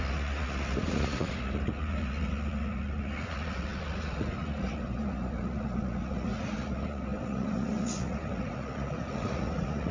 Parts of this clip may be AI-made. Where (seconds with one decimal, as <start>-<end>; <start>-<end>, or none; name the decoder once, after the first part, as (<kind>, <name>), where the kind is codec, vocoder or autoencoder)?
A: 0.0-9.9 (vocoder, Vocos)